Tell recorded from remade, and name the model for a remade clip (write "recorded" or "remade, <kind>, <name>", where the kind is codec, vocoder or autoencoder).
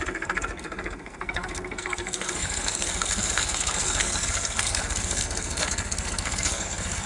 remade, codec, SNAC